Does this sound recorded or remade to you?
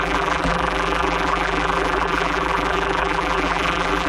remade